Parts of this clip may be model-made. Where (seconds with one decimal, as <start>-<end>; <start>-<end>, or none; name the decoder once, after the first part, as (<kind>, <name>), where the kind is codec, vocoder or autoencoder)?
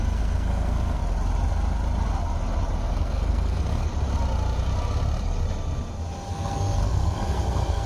0.0-1.0 (codec, SNAC); 2.9-3.9; 6.3-7.9